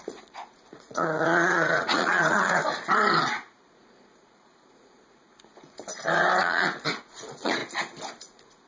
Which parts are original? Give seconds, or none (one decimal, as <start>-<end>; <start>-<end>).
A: 2.6-3.5; 5.9-6.4; 7.6-8.2